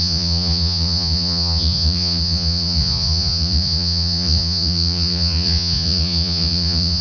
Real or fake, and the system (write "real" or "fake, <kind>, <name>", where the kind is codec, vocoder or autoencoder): fake, vocoder, Vocos